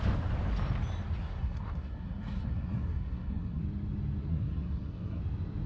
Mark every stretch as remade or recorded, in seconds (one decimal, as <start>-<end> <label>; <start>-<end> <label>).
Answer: 0.0-1.2 recorded; 1.2-3.6 remade; 3.6-4.3 recorded; 4.3-5.2 remade; 5.2-5.7 recorded